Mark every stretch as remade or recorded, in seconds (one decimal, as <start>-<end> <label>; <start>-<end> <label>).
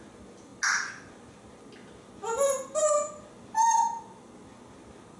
0.0-5.2 recorded